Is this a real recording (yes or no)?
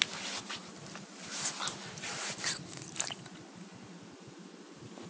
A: yes